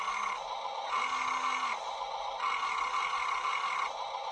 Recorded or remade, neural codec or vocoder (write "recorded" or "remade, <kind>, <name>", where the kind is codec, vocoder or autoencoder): recorded